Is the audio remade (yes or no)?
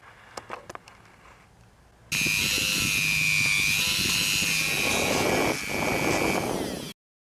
no